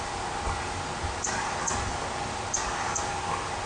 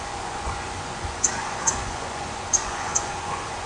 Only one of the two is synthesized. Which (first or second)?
second